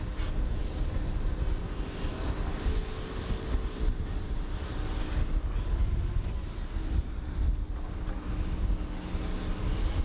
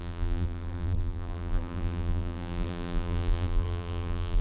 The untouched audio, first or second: first